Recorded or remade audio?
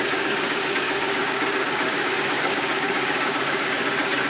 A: remade